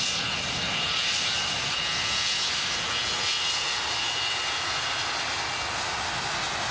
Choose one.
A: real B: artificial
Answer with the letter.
A